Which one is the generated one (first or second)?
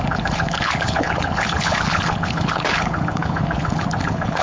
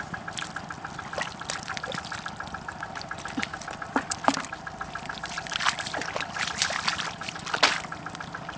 first